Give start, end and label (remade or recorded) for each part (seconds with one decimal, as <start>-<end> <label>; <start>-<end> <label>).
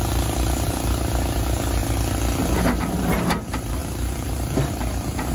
0.0-1.8 remade; 1.8-2.6 recorded; 2.6-5.3 remade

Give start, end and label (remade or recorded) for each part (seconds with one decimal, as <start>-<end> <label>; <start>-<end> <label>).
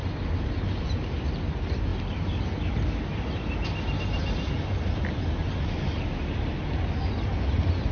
0.0-7.9 recorded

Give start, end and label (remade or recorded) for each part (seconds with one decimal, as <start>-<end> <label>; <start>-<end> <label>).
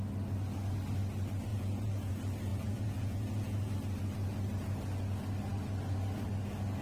0.0-1.5 recorded; 1.5-2.1 remade; 2.1-2.5 recorded; 2.5-3.7 remade; 3.7-6.8 recorded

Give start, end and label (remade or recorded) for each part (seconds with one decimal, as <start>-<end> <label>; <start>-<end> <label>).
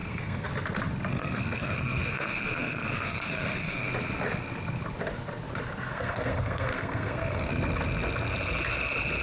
0.0-0.5 remade; 0.5-1.1 recorded; 1.1-3.9 remade; 3.9-5.9 recorded; 5.9-7.5 remade; 7.5-9.2 recorded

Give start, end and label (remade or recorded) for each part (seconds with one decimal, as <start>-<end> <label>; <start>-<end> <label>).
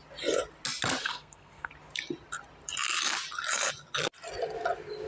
0.0-1.0 recorded; 1.0-1.7 remade; 1.7-5.1 recorded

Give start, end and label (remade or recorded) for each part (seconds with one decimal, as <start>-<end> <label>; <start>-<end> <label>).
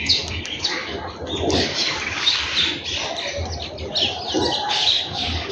0.0-0.8 remade; 0.8-1.5 recorded; 1.5-2.4 remade; 2.4-4.7 recorded; 4.7-5.5 remade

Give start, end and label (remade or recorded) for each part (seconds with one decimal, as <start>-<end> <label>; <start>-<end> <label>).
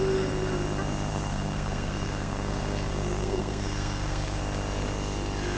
0.0-1.1 recorded; 1.1-4.4 remade; 4.4-5.6 recorded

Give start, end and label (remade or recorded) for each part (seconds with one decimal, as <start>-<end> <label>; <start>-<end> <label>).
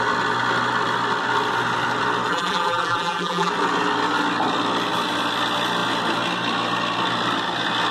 0.0-2.3 recorded; 2.3-3.5 remade; 3.5-7.9 recorded